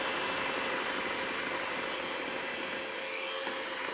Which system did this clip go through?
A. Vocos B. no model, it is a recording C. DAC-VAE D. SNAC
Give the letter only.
B